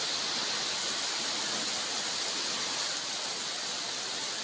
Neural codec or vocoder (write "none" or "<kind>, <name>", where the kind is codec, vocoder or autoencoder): none